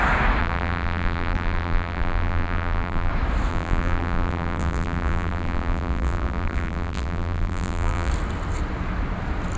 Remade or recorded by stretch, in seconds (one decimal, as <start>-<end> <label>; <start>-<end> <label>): 0.0-0.4 recorded; 0.4-3.1 remade; 3.1-3.5 recorded; 3.5-8.1 remade; 8.1-9.6 recorded